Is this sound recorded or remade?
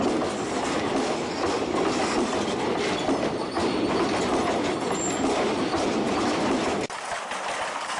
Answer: recorded